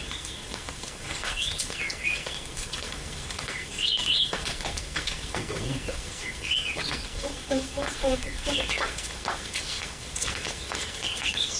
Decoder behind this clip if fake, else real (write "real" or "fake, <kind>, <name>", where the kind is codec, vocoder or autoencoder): fake, codec, SNAC